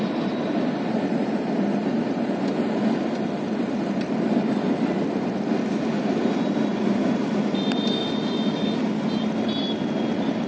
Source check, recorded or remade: recorded